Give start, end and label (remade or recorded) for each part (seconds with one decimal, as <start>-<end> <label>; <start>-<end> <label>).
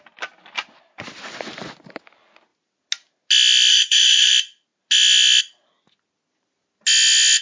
0.0-3.7 recorded; 3.7-4.3 remade; 4.3-7.4 recorded